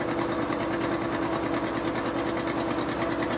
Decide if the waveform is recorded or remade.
recorded